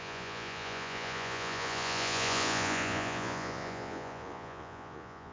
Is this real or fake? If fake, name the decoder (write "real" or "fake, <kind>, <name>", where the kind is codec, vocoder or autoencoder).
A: fake, vocoder, Vocos